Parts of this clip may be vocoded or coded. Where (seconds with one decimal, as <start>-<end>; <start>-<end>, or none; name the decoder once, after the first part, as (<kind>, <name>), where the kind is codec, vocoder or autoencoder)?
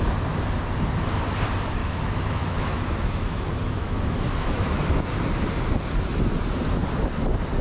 1.8-5.1 (autoencoder, DAC-VAE)